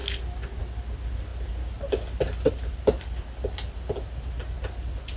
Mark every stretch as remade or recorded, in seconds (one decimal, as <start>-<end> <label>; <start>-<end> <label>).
0.0-5.2 recorded